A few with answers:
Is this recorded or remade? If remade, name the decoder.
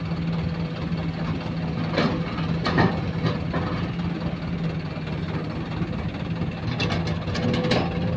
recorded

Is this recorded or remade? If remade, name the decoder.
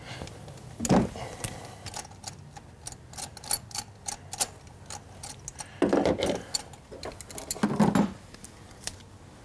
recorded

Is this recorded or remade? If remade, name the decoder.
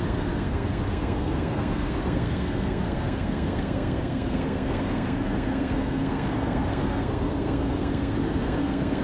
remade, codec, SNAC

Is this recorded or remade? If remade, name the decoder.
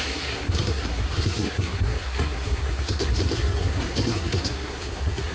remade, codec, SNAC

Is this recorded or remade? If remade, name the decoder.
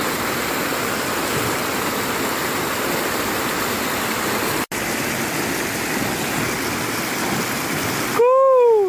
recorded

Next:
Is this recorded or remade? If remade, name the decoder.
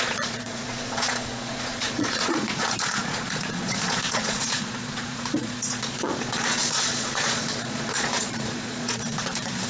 remade, vocoder, Vocos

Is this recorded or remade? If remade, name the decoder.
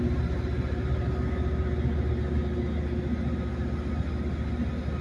recorded